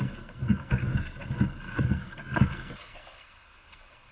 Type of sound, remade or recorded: remade